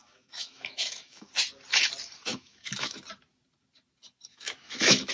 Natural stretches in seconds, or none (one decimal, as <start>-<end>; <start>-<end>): 1.3-2.3; 3.0-4.3